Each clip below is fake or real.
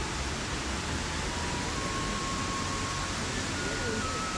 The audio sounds real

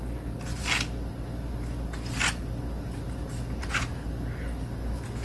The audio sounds real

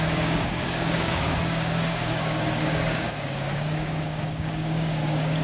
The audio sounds fake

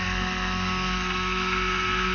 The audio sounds fake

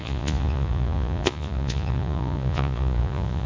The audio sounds fake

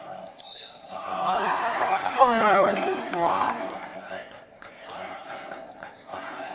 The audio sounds fake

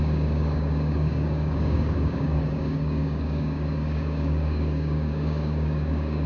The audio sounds fake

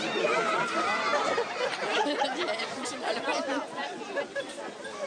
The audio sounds real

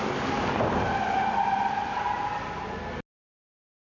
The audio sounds real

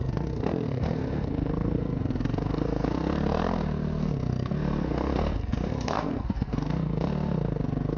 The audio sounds fake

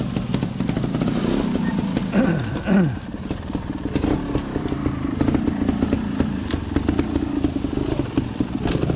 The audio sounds real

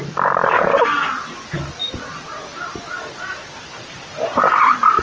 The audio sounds real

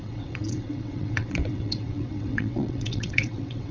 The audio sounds fake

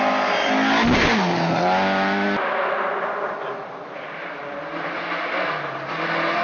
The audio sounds real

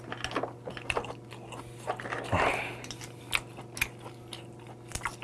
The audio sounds real